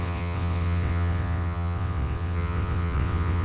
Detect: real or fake fake